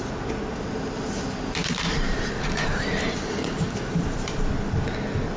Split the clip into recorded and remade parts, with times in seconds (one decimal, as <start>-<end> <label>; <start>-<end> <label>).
0.0-1.6 recorded; 1.6-4.5 remade; 4.5-5.4 recorded